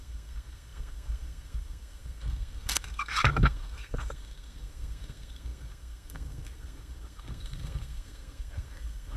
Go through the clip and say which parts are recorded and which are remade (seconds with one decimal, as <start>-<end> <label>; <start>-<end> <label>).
0.0-9.2 remade

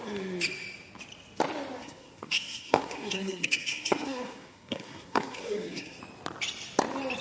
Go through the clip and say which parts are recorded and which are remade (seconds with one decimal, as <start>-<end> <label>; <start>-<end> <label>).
0.0-1.8 recorded; 1.8-6.0 remade; 6.0-7.2 recorded

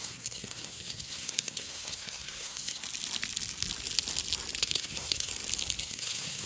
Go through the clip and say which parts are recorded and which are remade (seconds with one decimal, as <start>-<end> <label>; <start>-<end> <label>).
0.0-2.8 remade; 2.8-4.6 recorded; 4.6-5.3 remade; 5.3-5.8 recorded; 5.8-6.5 remade

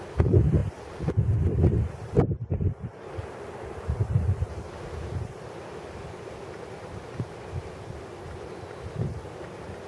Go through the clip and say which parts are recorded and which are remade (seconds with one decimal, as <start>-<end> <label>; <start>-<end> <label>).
0.0-9.9 recorded

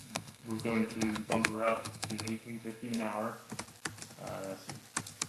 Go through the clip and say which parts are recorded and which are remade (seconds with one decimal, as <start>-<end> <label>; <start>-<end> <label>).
0.0-3.2 remade; 3.2-5.3 recorded

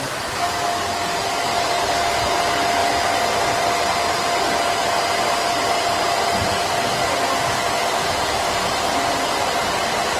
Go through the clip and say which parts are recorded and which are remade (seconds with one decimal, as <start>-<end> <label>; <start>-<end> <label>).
0.0-10.2 recorded

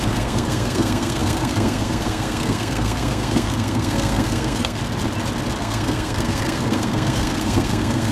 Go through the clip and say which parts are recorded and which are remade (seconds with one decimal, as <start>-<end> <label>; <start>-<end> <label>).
0.0-4.8 remade; 4.8-5.6 recorded; 5.6-8.1 remade

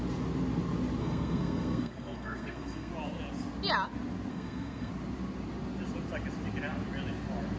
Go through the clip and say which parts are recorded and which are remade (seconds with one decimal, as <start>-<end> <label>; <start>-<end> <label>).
0.0-1.0 recorded; 1.0-2.9 remade; 2.9-4.3 recorded; 4.3-4.9 remade; 4.9-7.6 recorded